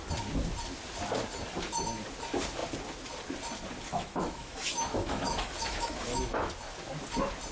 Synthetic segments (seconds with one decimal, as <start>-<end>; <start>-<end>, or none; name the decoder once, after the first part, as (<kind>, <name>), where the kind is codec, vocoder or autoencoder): 3.9-6.5 (autoencoder, DAC-VAE)